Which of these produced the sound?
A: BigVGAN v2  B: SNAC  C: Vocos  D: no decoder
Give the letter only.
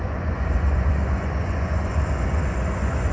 C